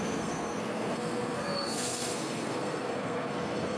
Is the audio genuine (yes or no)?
no